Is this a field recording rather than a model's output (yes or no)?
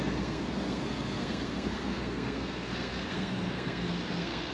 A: no